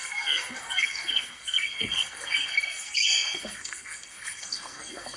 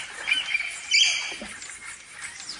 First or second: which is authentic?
second